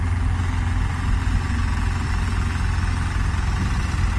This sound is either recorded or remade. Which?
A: recorded